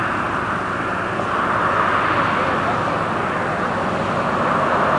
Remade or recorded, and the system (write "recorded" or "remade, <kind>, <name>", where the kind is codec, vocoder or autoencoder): recorded